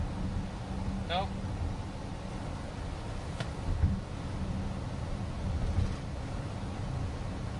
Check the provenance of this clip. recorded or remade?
recorded